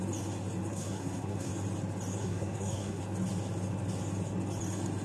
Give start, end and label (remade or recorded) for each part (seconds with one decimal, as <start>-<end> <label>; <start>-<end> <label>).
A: 0.0-0.7 recorded; 0.7-1.5 remade; 1.5-2.2 recorded; 2.2-3.0 remade; 3.0-5.0 recorded